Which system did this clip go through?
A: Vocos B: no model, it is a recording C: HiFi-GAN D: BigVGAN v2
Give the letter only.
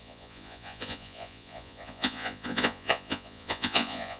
A